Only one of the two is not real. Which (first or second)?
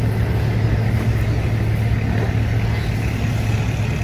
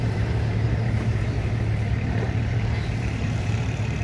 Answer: second